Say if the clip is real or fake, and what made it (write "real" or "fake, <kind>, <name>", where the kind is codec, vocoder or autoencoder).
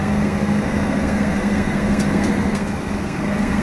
fake, codec, SNAC